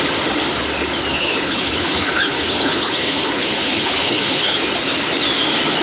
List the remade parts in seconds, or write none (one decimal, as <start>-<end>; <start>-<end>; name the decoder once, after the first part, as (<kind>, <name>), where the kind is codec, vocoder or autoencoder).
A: 1.1-4.6 (codec, HILCodec)